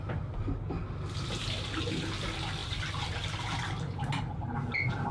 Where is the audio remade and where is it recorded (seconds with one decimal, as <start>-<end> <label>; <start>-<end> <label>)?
0.0-2.6 recorded; 2.6-4.0 remade; 4.0-5.1 recorded